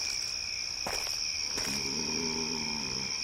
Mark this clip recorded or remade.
recorded